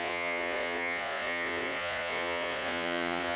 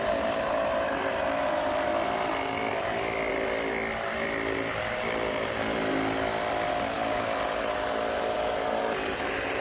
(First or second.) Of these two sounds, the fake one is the first